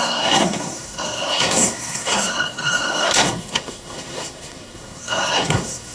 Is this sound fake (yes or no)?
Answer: yes